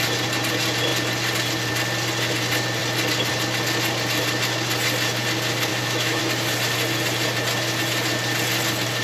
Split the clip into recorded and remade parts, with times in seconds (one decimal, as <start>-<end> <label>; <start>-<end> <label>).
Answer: 0.0-5.7 recorded; 5.7-6.2 remade; 6.2-9.0 recorded

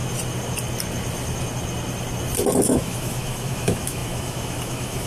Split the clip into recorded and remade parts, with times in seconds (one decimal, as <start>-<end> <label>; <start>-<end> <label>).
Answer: 0.0-2.6 recorded; 2.6-5.1 remade

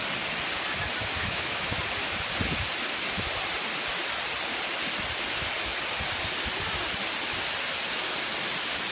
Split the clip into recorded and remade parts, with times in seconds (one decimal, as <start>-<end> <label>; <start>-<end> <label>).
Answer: 0.0-1.2 recorded; 1.2-1.8 remade; 1.8-8.9 recorded

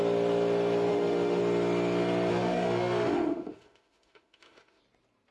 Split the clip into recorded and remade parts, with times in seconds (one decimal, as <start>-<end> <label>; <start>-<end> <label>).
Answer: 0.0-0.9 recorded; 0.9-1.4 remade; 1.4-2.3 recorded; 2.3-4.8 remade; 4.8-5.3 recorded

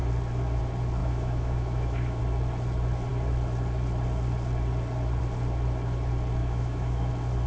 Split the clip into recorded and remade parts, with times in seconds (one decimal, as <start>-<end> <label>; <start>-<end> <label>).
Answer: 0.0-1.0 recorded; 1.0-2.2 remade; 2.2-6.4 recorded; 6.4-7.1 remade; 7.1-7.5 recorded

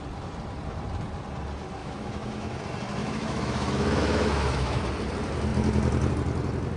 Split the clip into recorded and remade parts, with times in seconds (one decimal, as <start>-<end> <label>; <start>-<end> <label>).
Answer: 0.0-1.8 recorded; 1.8-2.6 remade; 2.6-3.0 recorded; 3.0-4.8 remade; 4.8-6.8 recorded

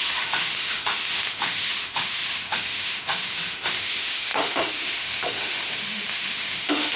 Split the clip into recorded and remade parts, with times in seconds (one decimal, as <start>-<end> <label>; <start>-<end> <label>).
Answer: 0.0-7.0 remade